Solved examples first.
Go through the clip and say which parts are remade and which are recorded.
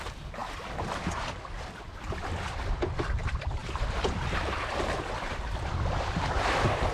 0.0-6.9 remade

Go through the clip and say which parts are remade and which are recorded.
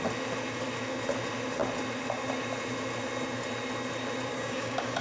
0.0-4.3 recorded; 4.3-5.0 remade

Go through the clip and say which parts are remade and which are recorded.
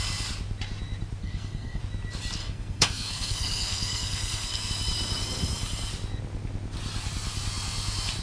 0.0-1.2 recorded; 1.2-1.8 remade; 1.8-2.4 recorded; 2.4-4.7 remade; 4.7-8.2 recorded